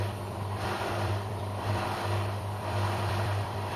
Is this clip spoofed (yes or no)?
yes